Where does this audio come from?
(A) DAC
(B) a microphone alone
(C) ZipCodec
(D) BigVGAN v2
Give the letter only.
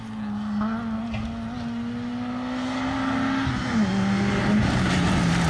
B